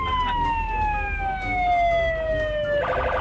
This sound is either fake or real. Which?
real